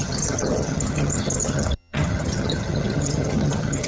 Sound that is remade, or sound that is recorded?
remade